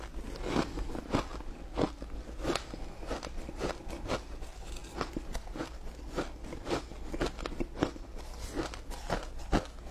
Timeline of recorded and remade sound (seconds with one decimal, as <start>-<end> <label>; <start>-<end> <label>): 0.0-9.9 recorded